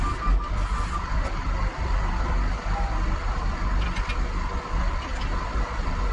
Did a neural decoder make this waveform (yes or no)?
no